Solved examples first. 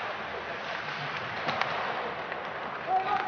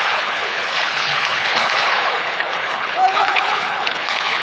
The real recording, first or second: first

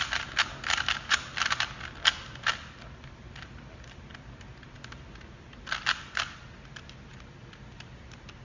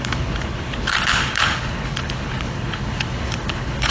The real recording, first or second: first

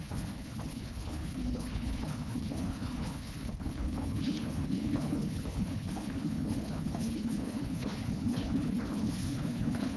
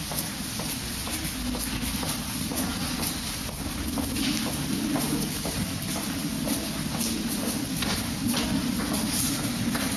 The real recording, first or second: second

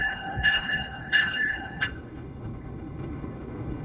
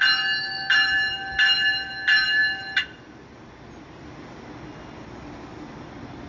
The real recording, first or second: second